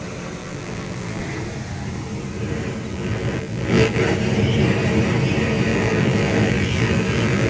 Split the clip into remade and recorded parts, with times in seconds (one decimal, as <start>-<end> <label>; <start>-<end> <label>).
0.0-0.4 recorded; 0.4-1.2 remade; 1.2-2.9 recorded; 2.9-4.0 remade; 4.0-5.7 recorded; 5.7-7.5 remade